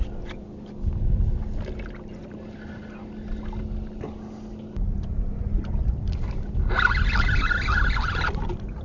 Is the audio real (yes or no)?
yes